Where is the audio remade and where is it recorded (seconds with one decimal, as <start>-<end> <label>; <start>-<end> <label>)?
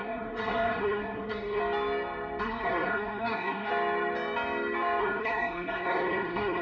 0.0-1.6 remade; 1.6-2.4 recorded; 2.4-3.7 remade; 3.7-5.0 recorded; 5.0-6.6 remade